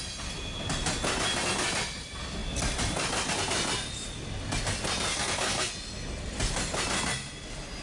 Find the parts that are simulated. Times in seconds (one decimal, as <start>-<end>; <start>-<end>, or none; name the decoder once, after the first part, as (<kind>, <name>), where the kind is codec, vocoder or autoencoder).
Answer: 5.1-5.7 (codec, SNAC)